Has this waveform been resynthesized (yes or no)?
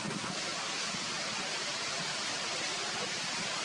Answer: yes